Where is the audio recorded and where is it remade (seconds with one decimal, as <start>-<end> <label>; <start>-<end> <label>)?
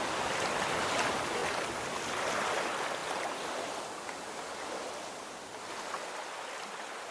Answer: 0.0-7.1 recorded